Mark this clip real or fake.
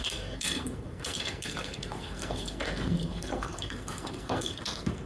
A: fake